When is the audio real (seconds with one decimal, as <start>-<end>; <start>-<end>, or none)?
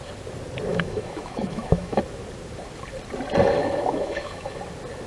0.0-0.7; 2.0-3.6; 4.6-5.1